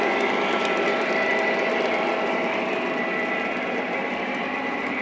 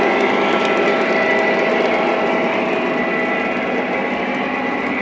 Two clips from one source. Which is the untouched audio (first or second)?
second